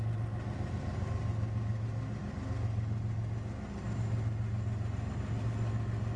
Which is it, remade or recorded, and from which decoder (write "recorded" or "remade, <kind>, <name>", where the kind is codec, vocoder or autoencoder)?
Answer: recorded